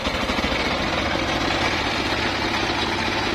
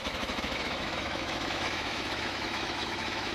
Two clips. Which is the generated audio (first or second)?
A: second